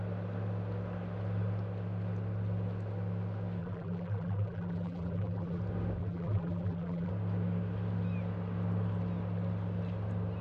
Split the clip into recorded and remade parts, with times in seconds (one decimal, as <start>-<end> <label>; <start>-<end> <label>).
0.0-3.6 recorded; 3.6-5.6 remade; 5.6-6.0 recorded; 6.0-7.1 remade; 7.1-10.4 recorded